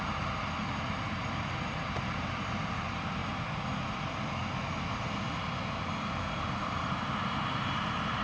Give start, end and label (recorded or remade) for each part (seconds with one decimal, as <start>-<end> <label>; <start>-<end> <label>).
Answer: 0.0-3.2 remade; 3.2-3.8 recorded; 3.8-4.4 remade; 4.4-6.4 recorded; 6.4-8.2 remade